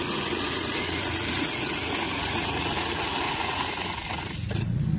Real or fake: fake